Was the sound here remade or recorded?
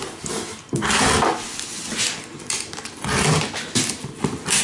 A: recorded